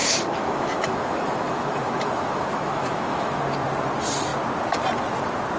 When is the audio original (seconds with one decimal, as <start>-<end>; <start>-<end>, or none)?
3.4-5.6